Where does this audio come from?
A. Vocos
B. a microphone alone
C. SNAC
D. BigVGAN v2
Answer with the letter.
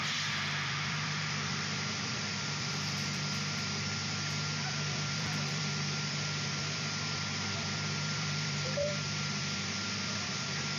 D